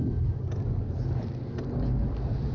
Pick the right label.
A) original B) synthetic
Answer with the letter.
A